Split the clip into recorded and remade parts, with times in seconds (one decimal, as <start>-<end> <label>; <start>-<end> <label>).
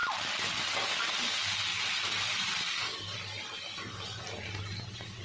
0.0-5.2 recorded